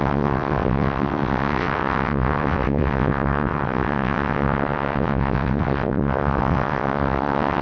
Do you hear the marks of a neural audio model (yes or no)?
yes